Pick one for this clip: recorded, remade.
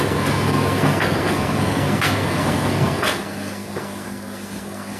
remade